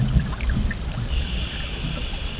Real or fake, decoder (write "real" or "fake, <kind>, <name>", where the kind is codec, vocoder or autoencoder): real